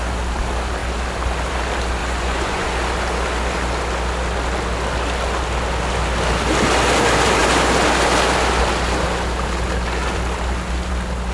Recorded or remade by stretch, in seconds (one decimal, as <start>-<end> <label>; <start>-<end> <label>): 0.0-2.0 recorded; 2.0-2.7 remade; 2.7-11.3 recorded